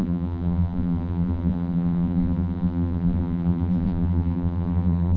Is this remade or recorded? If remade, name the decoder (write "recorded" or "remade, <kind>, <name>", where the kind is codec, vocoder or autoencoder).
remade, vocoder, BigVGAN v2